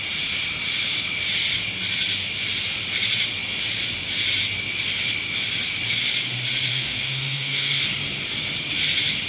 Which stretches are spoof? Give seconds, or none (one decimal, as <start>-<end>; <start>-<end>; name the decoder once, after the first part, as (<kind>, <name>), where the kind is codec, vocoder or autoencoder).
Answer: 6.7-7.8 (autoencoder, DAC-VAE)